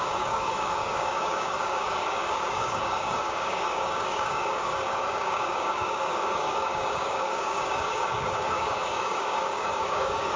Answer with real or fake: fake